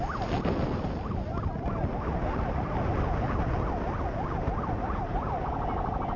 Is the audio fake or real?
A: real